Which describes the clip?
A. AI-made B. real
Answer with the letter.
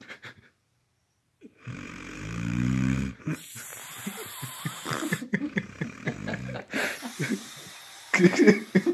A